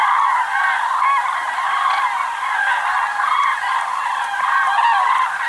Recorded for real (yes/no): yes